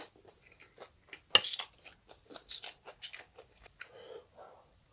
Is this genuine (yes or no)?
yes